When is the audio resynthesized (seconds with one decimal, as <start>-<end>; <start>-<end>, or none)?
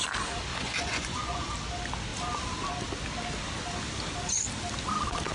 0.5-1.5